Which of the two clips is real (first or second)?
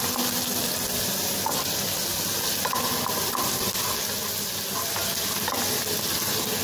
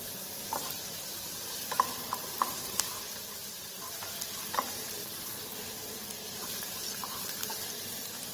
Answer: first